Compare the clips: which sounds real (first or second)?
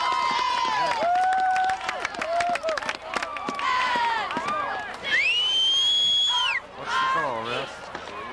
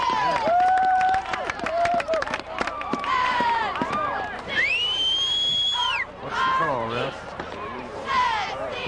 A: first